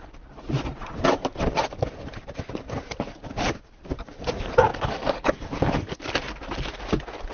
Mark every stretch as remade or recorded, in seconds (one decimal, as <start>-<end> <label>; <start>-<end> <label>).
0.0-4.7 recorded; 4.7-6.1 remade; 6.1-7.3 recorded